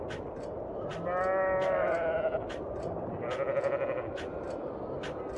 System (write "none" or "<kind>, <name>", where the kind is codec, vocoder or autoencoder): none